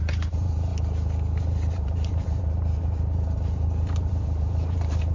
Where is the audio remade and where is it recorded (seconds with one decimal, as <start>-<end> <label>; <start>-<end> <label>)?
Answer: 0.0-0.7 remade; 0.7-1.4 recorded; 1.4-5.1 remade